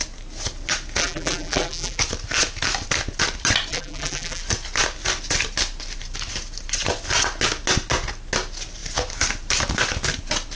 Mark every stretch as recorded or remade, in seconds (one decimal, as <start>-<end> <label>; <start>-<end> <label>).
0.0-1.0 recorded; 1.0-2.0 remade; 2.0-3.7 recorded; 3.7-4.4 remade; 4.4-10.5 recorded